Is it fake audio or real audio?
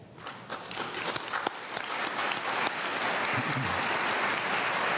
real